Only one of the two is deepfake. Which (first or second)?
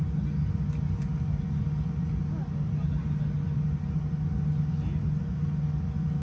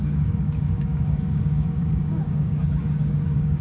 second